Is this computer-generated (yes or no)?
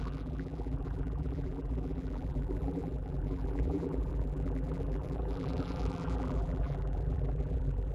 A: yes